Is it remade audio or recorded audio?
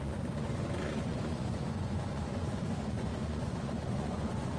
remade